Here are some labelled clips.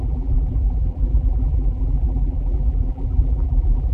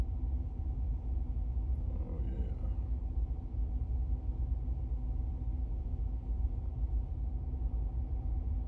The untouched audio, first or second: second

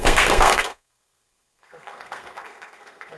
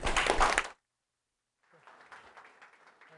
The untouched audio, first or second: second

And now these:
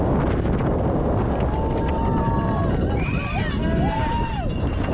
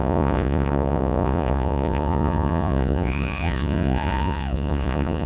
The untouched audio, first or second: first